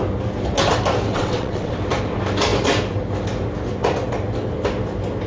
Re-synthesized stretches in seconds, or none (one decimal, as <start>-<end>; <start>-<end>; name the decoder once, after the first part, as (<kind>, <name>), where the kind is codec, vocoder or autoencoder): 1.1-1.7 (vocoder, WaveNeXt)